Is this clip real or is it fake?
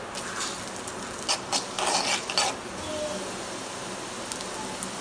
real